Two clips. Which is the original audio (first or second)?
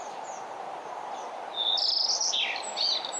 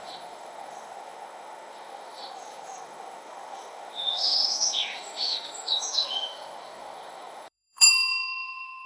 first